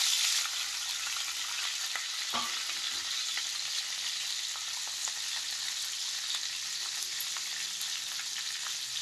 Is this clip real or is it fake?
real